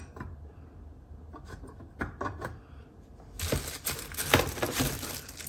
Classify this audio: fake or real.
real